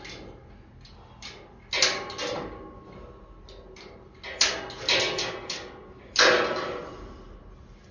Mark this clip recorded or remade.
recorded